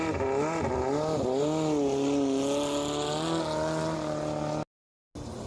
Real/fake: real